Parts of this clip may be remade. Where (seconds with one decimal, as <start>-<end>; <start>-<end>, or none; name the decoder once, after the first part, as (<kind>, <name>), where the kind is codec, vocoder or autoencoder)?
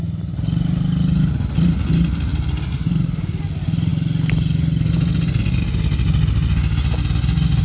2.3-3.4 (vocoder, BigVGAN v2)